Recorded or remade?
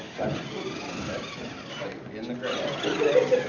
recorded